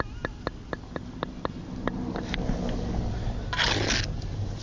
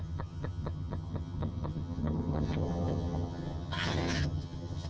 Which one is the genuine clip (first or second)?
first